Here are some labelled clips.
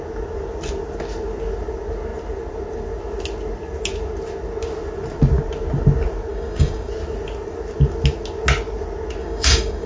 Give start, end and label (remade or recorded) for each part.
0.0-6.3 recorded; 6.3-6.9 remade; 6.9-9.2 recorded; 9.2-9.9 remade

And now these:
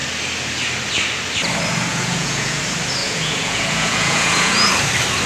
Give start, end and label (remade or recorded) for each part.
0.0-1.9 recorded; 1.9-2.6 remade; 2.6-3.0 recorded; 3.0-4.7 remade; 4.7-5.3 recorded

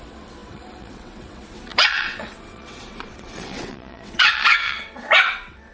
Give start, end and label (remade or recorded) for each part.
0.0-5.7 remade

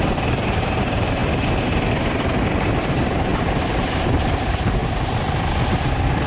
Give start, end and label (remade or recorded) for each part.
0.0-1.2 remade; 1.2-2.4 recorded; 2.4-4.8 remade; 4.8-5.8 recorded; 5.8-6.3 remade